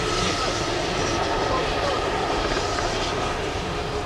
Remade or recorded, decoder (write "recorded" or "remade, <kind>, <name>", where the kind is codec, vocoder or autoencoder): remade, vocoder, BigVGAN v2